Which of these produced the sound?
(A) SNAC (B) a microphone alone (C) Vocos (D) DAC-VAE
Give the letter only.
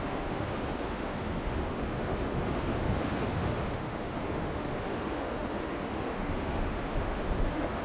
D